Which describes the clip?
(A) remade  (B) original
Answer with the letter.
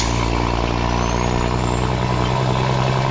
B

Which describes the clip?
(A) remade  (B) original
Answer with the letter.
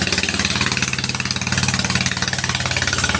B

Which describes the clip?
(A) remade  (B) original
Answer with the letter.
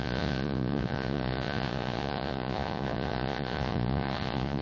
A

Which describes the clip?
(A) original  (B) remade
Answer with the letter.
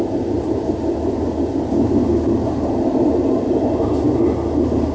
A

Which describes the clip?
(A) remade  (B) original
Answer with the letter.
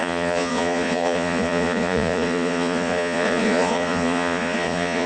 A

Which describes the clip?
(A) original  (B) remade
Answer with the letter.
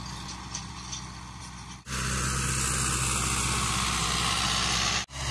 A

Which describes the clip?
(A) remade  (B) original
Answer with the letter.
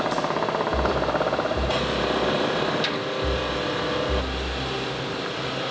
B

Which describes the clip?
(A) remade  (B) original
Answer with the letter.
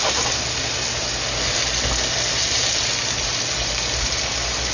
B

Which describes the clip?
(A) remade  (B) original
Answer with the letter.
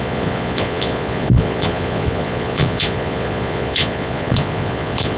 A